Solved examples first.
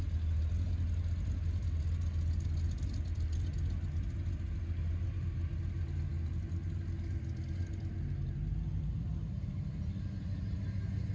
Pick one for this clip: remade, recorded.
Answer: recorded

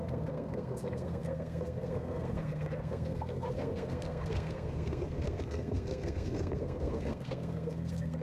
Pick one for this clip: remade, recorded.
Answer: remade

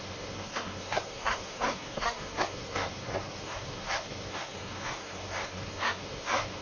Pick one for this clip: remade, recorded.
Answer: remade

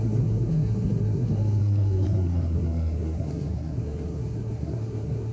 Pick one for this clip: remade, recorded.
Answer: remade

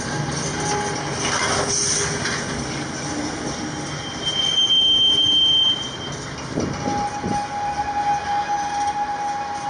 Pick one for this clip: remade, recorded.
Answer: recorded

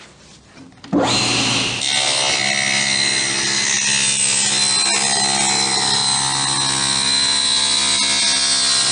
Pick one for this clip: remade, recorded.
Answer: recorded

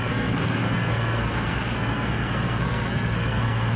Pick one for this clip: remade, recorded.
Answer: remade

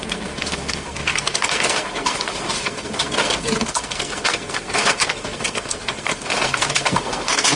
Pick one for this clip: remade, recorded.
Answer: remade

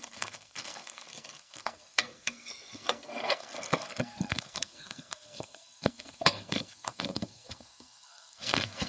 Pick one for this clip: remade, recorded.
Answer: remade